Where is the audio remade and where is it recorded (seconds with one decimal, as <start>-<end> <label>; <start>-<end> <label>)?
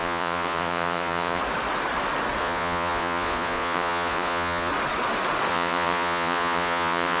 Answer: 0.0-1.4 remade; 1.4-2.4 recorded; 2.4-4.7 remade; 4.7-5.5 recorded; 5.5-7.2 remade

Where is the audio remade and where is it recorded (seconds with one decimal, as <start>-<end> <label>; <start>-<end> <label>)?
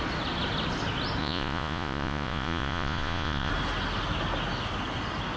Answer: 0.0-1.2 recorded; 1.2-3.5 remade; 3.5-5.4 recorded